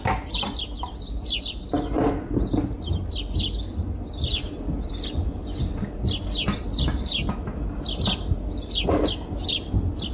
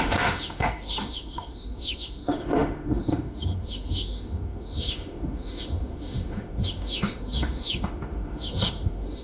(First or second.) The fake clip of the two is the second